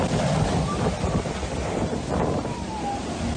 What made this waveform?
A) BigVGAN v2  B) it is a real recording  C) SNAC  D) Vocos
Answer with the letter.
A